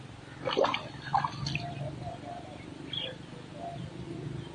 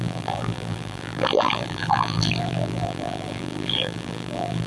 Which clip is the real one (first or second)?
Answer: first